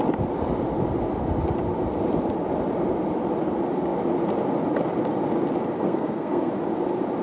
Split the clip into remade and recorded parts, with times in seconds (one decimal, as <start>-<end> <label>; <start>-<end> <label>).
0.0-5.7 recorded; 5.7-6.5 remade; 6.5-7.2 recorded